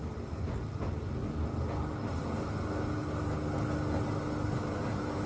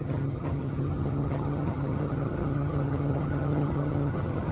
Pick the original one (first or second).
first